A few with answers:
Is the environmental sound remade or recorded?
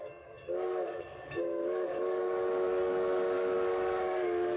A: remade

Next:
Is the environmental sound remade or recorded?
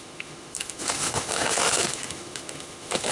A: remade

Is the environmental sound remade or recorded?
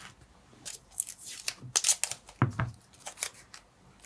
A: recorded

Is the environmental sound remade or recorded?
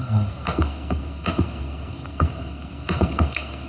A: remade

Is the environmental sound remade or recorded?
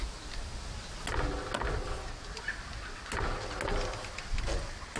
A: recorded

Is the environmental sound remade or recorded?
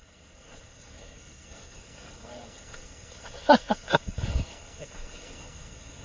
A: remade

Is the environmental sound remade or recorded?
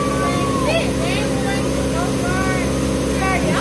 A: recorded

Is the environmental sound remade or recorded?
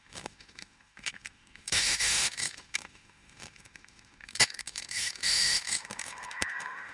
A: remade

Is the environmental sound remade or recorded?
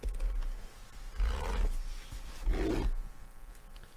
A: recorded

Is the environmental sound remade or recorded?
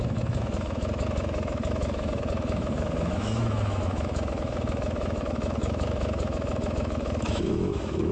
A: remade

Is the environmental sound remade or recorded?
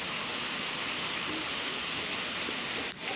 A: recorded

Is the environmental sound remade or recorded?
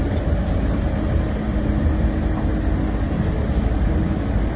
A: recorded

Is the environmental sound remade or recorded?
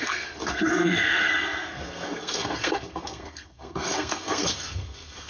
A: remade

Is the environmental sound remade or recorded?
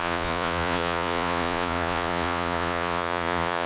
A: remade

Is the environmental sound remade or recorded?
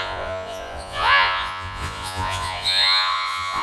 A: remade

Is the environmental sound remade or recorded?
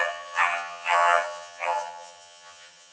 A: remade